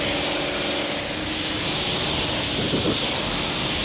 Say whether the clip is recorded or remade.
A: recorded